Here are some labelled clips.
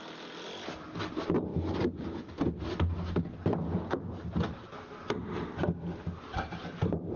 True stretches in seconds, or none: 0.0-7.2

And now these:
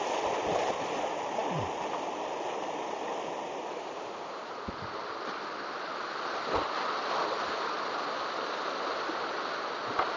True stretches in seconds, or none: 0.0-10.2

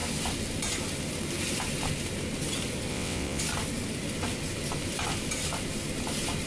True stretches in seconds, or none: 0.0-2.9; 3.4-6.5

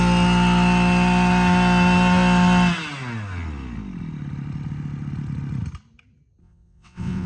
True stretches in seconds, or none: 0.0-6.4